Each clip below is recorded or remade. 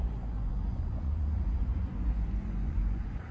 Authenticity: remade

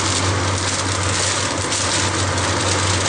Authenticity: recorded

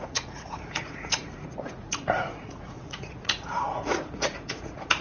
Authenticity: remade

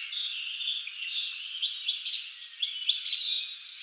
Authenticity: recorded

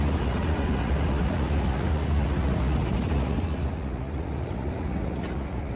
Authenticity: remade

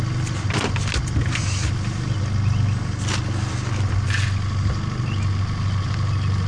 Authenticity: recorded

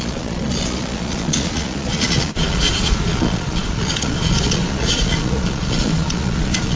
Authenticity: remade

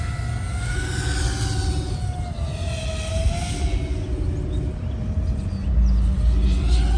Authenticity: recorded